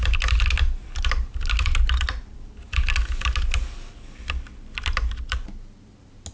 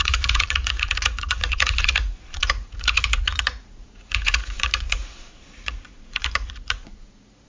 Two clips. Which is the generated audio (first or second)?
second